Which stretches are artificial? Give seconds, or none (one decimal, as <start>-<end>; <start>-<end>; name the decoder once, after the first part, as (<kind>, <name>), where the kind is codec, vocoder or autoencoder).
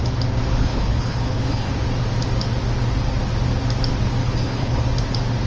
0.6-1.7 (codec, HILCodec); 4.2-4.8